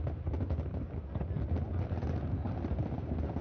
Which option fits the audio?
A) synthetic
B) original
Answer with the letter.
B